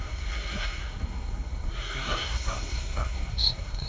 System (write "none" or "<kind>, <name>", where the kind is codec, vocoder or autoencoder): codec, SNAC